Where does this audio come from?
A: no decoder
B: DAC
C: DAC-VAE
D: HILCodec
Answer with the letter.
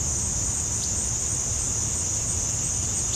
A